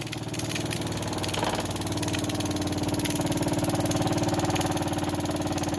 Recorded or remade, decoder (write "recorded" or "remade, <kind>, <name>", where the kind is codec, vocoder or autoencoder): recorded